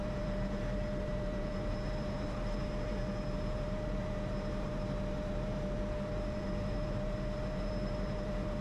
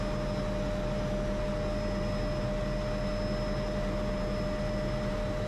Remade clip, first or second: first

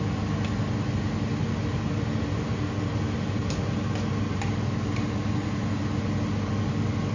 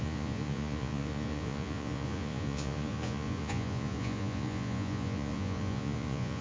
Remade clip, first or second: second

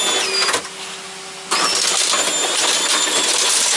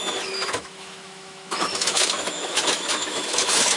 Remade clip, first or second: second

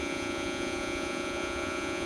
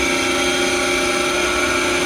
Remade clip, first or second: first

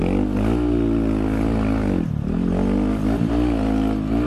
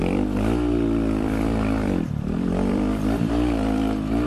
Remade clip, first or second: second